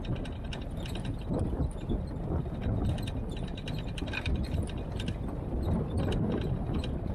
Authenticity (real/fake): fake